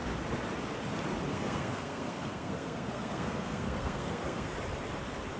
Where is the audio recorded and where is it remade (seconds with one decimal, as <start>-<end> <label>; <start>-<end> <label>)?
0.0-1.3 recorded; 1.3-4.5 remade; 4.5-5.4 recorded